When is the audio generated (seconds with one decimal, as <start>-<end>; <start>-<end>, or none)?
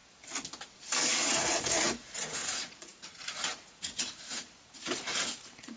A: 1.1-5.8